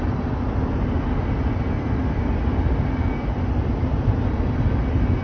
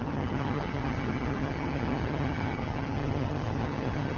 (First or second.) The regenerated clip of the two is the second